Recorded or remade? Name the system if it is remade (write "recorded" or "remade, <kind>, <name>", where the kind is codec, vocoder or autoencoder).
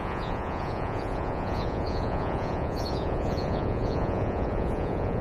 remade, vocoder, Vocos